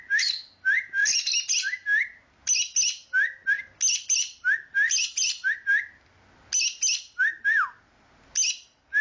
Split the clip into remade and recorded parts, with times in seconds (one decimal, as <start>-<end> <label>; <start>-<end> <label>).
0.0-9.0 recorded